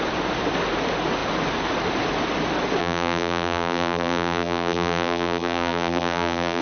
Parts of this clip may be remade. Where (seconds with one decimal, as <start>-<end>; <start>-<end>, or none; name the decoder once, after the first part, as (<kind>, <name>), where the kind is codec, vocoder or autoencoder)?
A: 2.8-6.6 (vocoder, BigVGAN v2)